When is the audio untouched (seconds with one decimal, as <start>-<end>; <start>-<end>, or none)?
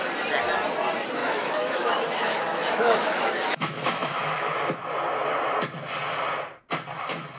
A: 0.0-1.2; 4.8-7.4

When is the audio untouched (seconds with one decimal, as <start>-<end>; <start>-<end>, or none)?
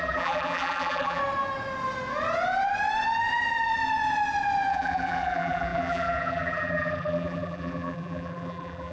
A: 1.2-4.7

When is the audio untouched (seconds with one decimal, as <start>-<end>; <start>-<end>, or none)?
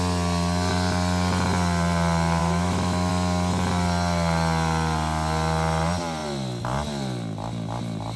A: 0.0-2.4; 3.1-8.2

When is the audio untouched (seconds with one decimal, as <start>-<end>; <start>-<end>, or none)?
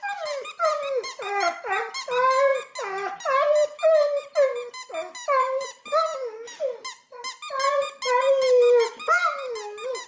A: 0.0-10.1